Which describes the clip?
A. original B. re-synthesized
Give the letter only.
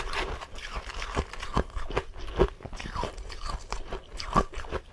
A